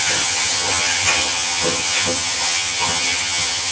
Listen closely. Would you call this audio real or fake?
fake